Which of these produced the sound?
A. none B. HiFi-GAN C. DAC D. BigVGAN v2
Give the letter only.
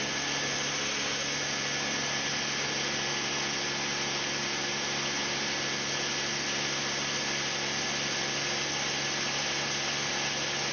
A